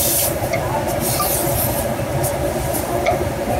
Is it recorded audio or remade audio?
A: remade